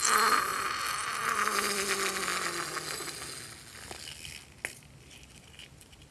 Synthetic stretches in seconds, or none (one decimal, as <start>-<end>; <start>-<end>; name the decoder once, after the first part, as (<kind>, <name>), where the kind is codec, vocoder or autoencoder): none